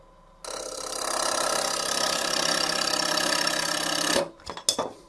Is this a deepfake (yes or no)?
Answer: no